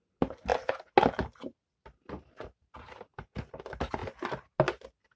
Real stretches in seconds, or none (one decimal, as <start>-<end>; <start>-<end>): 0.0-5.2